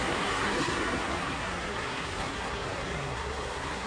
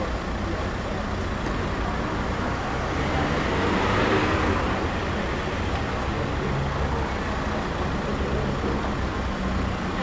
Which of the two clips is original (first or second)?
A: second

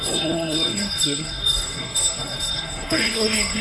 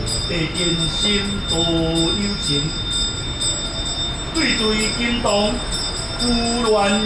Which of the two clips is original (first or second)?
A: second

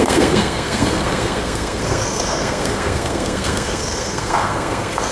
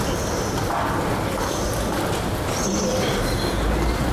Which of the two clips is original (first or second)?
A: second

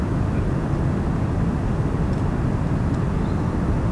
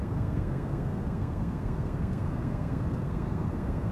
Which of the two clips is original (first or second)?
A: first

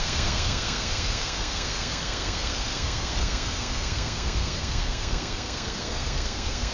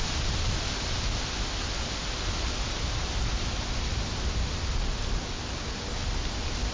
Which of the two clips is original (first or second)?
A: second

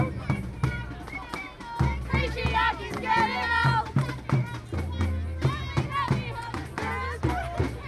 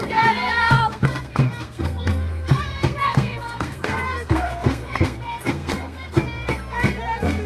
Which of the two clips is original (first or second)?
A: first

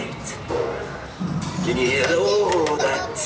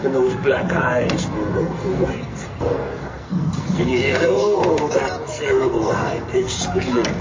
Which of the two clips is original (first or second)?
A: first